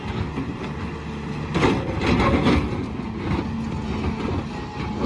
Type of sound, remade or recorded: recorded